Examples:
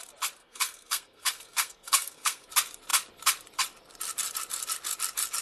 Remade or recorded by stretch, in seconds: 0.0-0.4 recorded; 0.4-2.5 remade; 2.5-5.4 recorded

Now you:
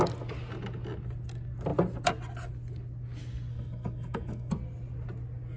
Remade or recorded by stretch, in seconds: 0.0-3.5 recorded; 3.5-4.5 remade; 4.5-5.6 recorded

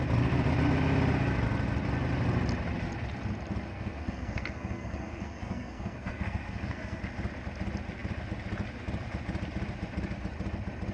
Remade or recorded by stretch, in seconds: 0.0-3.7 recorded; 3.7-7.0 remade; 7.0-10.9 recorded

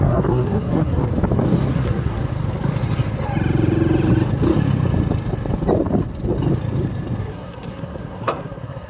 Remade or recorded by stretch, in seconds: 0.0-1.1 remade; 1.1-1.7 recorded; 1.7-2.2 remade; 2.2-7.2 recorded; 7.2-8.9 remade

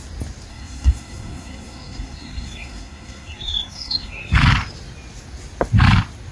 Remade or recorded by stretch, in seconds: 0.0-0.5 recorded; 0.5-4.3 remade; 4.3-6.3 recorded

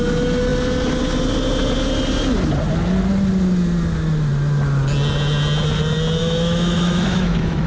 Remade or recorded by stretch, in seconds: 0.0-6.2 recorded; 6.2-7.7 remade

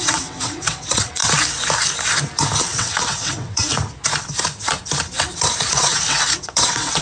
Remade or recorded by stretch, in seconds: 0.0-1.2 remade; 1.2-2.6 recorded; 2.6-3.7 remade; 3.7-5.7 recorded; 5.7-7.0 remade